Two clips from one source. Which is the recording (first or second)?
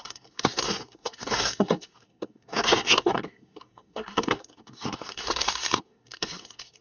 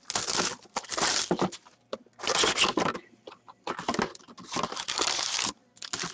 second